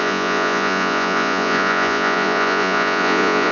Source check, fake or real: fake